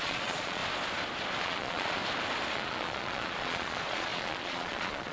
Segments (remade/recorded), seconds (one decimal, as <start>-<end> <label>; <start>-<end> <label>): 0.0-0.6 remade; 0.6-1.4 recorded; 1.4-2.0 remade; 2.0-2.5 recorded; 2.5-5.1 remade